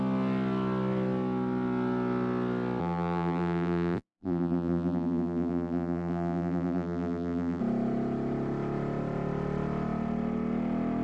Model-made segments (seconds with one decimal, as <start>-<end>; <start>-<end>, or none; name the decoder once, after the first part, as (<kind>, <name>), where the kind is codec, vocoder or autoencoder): 2.8-7.6 (vocoder, BigVGAN v2)